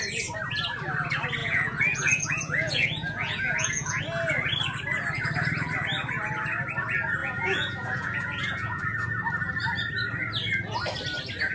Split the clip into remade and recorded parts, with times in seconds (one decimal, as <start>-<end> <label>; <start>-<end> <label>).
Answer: 0.0-1.4 recorded; 1.4-4.0 remade; 4.0-7.2 recorded; 7.2-8.8 remade; 8.8-11.5 recorded